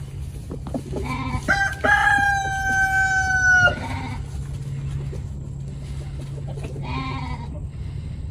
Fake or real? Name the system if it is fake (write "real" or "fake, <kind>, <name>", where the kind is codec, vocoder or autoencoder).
real